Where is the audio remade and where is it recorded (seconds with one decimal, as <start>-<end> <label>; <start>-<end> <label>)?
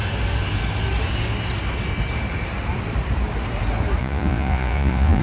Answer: 0.0-4.0 recorded; 4.0-5.2 remade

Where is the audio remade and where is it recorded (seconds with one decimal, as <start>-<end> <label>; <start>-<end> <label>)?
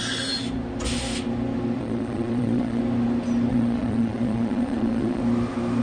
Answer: 0.0-1.8 recorded; 1.8-2.8 remade; 2.8-3.5 recorded; 3.5-5.2 remade; 5.2-5.8 recorded